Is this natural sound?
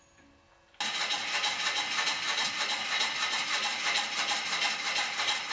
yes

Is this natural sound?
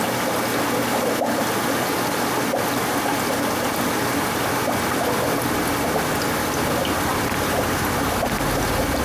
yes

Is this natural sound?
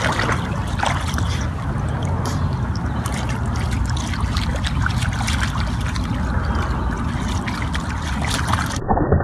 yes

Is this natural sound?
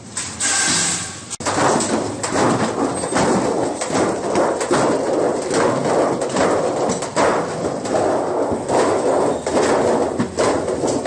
yes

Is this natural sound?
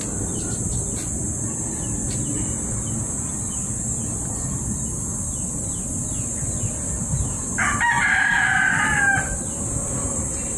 yes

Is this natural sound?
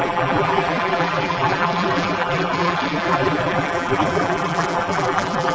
no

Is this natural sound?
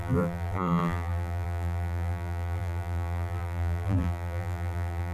no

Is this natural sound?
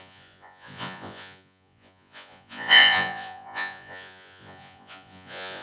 no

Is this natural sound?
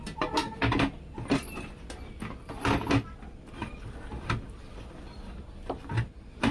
yes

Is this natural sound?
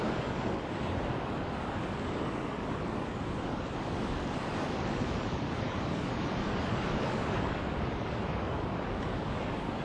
no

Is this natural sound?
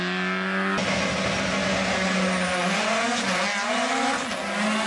yes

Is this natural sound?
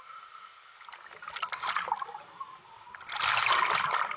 yes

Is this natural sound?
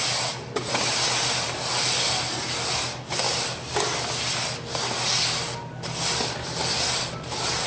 yes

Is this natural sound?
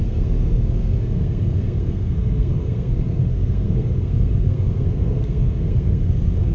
no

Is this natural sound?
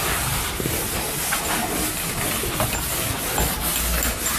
yes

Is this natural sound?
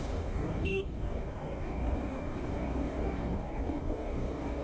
no